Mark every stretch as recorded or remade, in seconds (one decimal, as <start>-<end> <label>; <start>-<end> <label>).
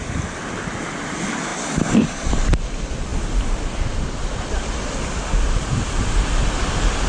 0.0-7.1 recorded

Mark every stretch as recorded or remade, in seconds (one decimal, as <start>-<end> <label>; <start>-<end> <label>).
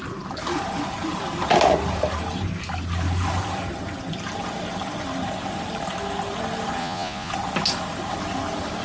0.0-6.8 recorded; 6.8-7.3 remade; 7.3-8.8 recorded